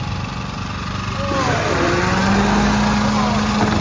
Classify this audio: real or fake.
real